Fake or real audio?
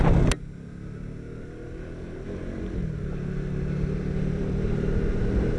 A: real